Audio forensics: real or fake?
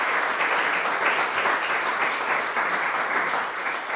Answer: real